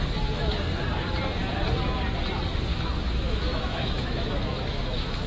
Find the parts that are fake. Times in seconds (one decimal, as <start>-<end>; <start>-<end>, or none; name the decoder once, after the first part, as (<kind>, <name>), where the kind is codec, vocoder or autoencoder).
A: 2.7-5.3 (autoencoder, DAC-VAE)